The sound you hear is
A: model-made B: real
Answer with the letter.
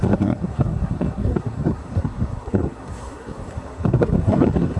A